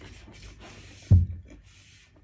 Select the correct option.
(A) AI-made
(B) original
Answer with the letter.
B